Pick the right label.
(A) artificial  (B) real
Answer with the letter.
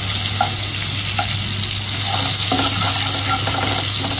B